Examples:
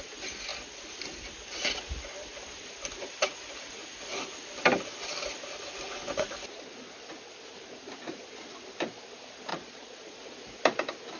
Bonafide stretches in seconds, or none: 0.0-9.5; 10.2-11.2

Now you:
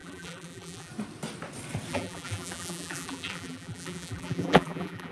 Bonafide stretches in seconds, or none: 0.9-1.9

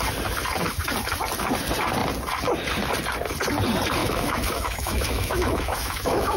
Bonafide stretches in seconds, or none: 0.0-4.0

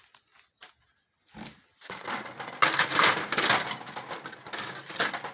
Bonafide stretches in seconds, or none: 0.0-5.3

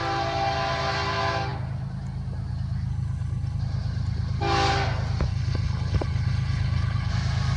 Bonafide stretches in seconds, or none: 0.0-2.9; 3.6-5.3; 7.1-7.6

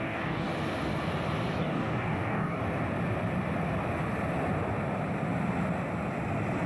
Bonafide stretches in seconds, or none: 0.5-1.6; 2.6-6.7

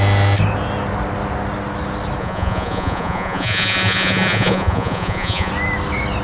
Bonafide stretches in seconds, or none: 0.0-2.2; 5.5-6.2

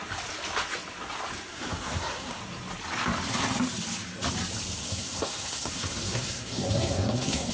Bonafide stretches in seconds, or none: 0.0-1.5; 2.4-4.8